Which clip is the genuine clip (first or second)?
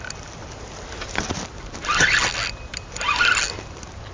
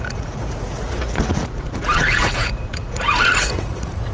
first